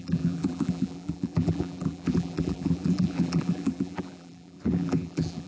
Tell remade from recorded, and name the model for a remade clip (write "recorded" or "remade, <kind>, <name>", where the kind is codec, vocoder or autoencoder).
remade, vocoder, BigVGAN v2